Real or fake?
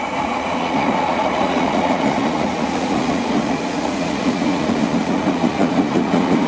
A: fake